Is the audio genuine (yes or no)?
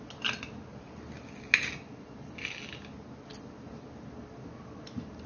yes